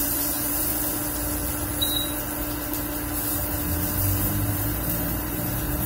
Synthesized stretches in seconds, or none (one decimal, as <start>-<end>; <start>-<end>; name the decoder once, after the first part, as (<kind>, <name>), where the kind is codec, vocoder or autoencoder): 0.0-0.7 (vocoder, BigVGAN v2); 4.2-5.9